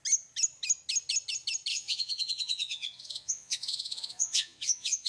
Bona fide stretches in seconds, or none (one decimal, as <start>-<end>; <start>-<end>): 0.0-1.7